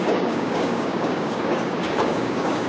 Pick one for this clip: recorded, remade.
remade